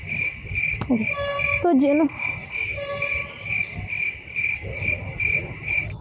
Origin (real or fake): real